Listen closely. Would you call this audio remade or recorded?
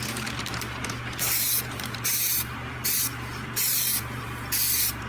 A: remade